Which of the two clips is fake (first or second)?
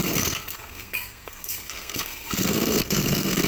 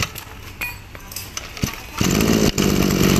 first